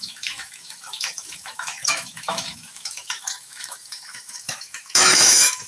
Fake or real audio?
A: fake